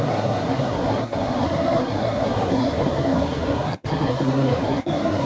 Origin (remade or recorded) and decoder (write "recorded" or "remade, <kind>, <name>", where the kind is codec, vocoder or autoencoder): remade, codec, SNAC